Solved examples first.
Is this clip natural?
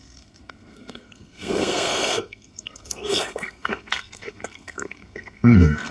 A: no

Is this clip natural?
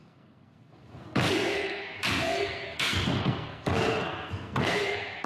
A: no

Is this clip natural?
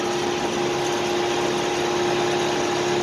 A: yes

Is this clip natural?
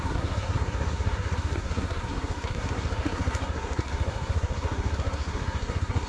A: no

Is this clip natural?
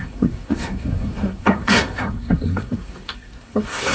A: no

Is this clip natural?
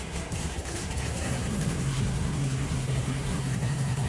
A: no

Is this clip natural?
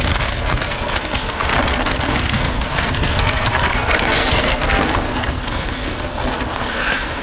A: no